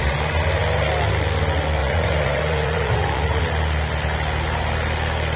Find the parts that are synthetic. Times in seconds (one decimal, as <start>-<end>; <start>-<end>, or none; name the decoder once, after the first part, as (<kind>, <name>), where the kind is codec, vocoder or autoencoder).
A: 1.8-3.4 (vocoder, Vocos)